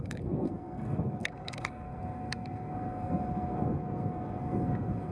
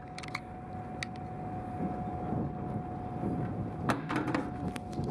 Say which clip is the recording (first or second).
second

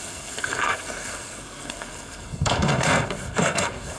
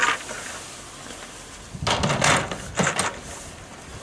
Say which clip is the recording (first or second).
second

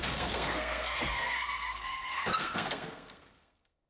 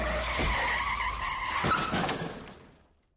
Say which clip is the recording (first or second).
second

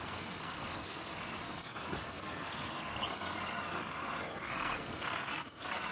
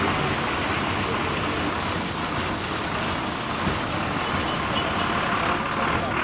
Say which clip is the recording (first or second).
second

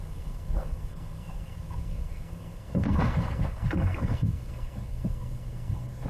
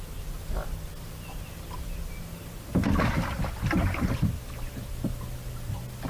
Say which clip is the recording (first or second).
second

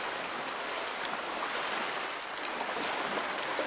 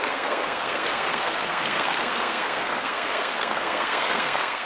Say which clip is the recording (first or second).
first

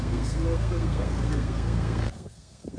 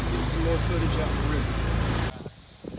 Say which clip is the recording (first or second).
second